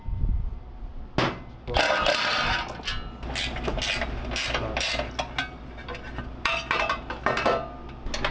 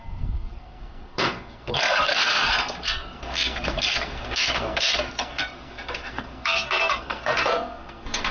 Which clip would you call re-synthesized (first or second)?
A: second